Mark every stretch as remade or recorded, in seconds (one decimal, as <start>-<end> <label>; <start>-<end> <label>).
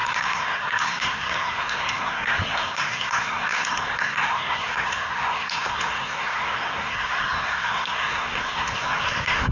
0.0-9.5 remade